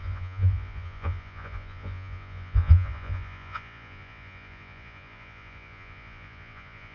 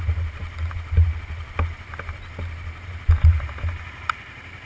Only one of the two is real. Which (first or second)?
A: second